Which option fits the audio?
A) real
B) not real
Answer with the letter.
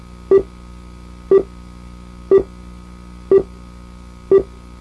A